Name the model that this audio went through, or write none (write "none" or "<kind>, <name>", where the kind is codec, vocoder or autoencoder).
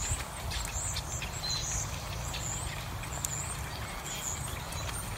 none